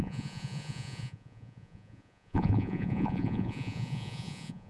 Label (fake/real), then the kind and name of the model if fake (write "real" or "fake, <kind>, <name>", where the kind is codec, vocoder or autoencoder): fake, vocoder, Vocos